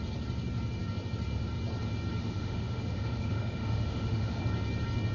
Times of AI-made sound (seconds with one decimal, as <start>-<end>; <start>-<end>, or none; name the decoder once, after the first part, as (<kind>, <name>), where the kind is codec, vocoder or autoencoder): 2.2-4.4 (autoencoder, DAC-VAE)